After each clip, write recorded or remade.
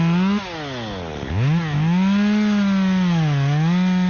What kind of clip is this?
recorded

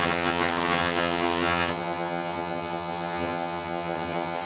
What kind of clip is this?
remade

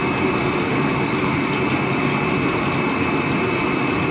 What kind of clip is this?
recorded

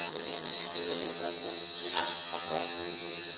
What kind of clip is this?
remade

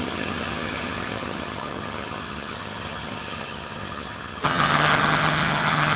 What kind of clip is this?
remade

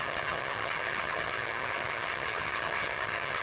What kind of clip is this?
remade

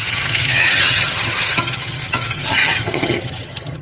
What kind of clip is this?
remade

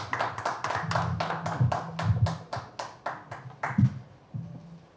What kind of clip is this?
recorded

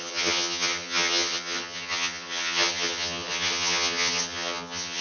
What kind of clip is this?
remade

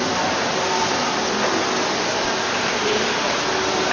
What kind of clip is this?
recorded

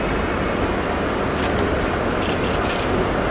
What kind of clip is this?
recorded